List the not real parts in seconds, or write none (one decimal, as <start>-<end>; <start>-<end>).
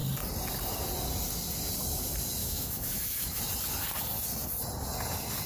2.4-3.4